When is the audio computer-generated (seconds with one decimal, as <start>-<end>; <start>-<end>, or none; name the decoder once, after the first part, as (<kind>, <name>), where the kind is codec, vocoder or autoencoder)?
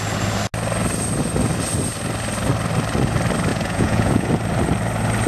3.5-4.3 (vocoder, Vocos)